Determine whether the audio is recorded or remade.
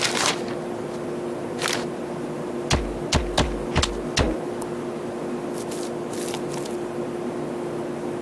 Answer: recorded